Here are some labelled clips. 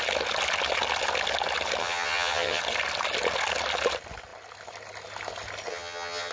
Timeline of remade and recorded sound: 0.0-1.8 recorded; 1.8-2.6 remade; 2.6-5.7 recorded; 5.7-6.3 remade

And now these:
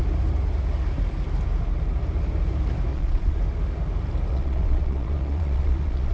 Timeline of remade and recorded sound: 0.0-2.9 recorded; 2.9-3.4 remade; 3.4-4.3 recorded; 4.3-6.1 remade

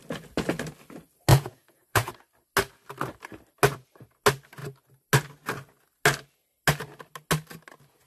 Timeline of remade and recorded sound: 0.0-1.3 recorded; 1.3-2.1 remade; 2.1-8.1 recorded

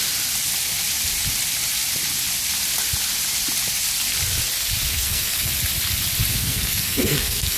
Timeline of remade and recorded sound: 0.0-4.9 recorded; 4.9-5.5 remade; 5.5-6.3 recorded; 6.3-7.6 remade